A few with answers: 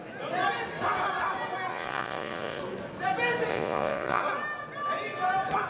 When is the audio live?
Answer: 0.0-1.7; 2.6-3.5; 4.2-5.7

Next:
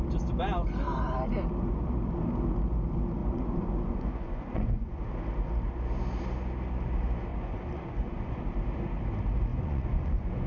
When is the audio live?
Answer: 0.0-3.2; 5.0-7.3; 8.4-9.5

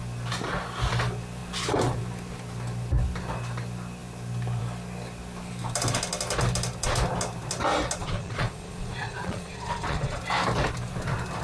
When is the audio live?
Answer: 0.0-8.0; 10.2-11.4

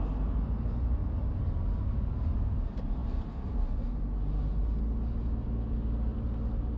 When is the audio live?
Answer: 0.0-6.8

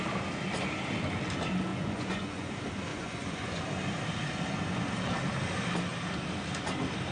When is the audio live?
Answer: 0.0-1.7; 2.5-2.9; 3.6-7.1

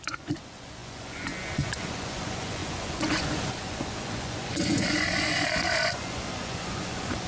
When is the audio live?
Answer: none